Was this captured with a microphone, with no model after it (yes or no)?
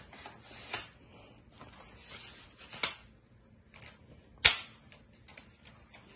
yes